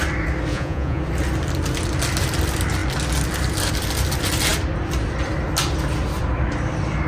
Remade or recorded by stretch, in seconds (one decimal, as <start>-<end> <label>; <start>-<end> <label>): 0.0-0.5 recorded; 0.5-1.0 remade; 1.0-7.1 recorded